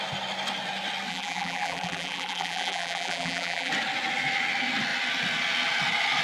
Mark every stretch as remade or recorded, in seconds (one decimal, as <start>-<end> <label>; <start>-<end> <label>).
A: 0.0-1.1 recorded; 1.1-3.7 remade; 3.7-6.2 recorded